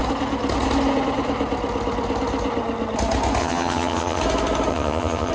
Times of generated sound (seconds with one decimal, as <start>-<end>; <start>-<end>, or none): 3.4-4.2; 4.7-5.3